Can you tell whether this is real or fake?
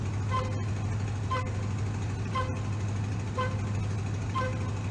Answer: real